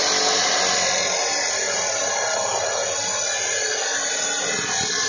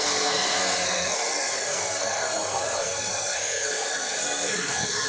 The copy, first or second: second